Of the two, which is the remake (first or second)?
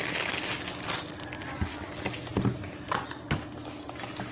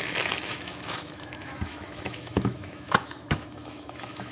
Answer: second